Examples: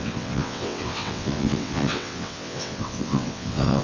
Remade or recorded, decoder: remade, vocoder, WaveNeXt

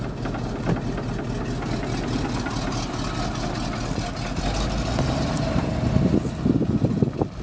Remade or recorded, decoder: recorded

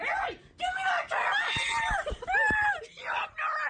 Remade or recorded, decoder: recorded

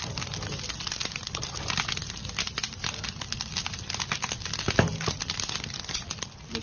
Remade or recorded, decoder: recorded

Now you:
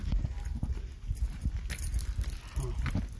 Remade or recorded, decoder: recorded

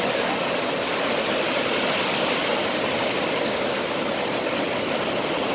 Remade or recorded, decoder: recorded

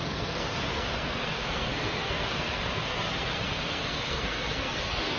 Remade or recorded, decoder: remade, codec, SNAC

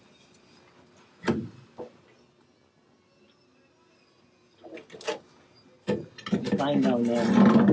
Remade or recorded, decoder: recorded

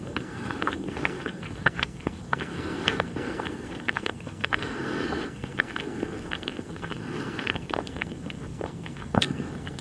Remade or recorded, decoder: remade, codec, SNAC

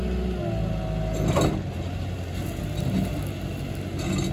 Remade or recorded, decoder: recorded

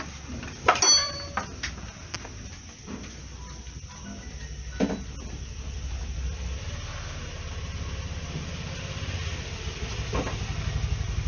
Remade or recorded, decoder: recorded